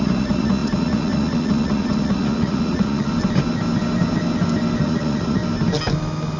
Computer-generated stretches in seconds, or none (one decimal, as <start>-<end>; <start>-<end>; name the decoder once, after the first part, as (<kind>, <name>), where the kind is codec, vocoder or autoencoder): 0.0-3.1 (vocoder, Vocos); 4.8-5.4